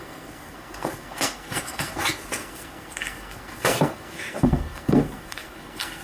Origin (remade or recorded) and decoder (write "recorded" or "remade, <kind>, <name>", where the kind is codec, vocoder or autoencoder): remade, codec, SNAC